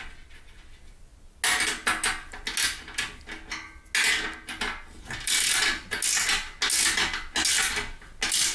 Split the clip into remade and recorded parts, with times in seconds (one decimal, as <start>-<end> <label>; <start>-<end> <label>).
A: 0.0-8.5 recorded